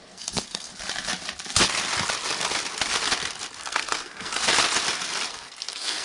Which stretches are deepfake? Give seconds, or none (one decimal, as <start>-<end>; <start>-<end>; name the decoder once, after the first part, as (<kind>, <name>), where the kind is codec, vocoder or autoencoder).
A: 0.0-0.7 (codec, SNAC); 3.6-4.5; 5.3-6.0